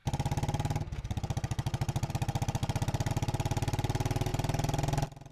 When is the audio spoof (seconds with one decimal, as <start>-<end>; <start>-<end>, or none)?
none